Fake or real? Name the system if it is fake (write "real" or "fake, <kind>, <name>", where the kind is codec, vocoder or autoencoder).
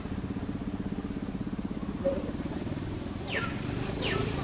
real